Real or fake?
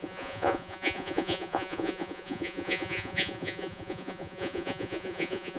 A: fake